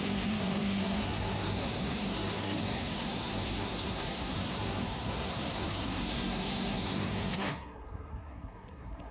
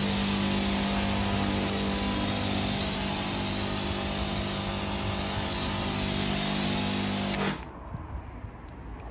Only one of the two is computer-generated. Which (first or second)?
first